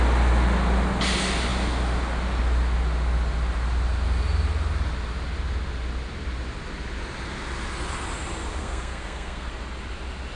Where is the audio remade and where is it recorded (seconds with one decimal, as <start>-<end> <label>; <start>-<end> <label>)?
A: 0.0-8.6 recorded; 8.6-9.5 remade; 9.5-10.4 recorded